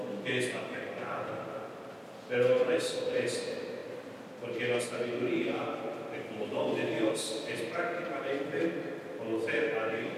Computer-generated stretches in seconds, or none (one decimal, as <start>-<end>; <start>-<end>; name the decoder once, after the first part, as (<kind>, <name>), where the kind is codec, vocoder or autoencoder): none